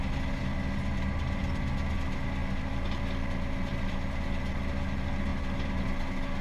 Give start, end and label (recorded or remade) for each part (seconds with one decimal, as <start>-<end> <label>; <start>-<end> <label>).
0.0-6.4 recorded